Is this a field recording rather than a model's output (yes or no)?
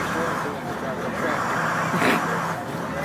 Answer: yes